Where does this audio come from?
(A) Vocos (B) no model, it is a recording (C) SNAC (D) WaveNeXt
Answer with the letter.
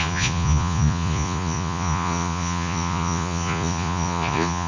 A